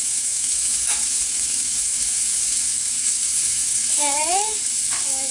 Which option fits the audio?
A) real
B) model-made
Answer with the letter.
B